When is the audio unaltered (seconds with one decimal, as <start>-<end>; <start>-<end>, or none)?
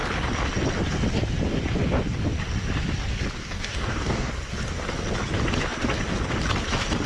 0.0-3.4; 4.3-7.1